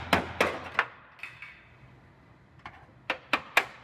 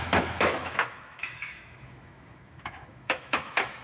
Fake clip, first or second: second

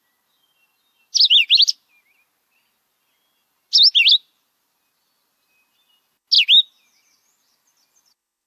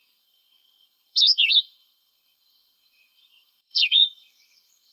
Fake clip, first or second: second